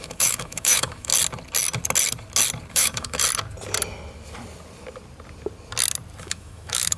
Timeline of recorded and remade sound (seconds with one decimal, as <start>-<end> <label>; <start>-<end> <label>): 0.0-1.1 remade; 1.1-2.7 recorded; 2.7-3.2 remade; 3.2-6.2 recorded; 6.2-7.0 remade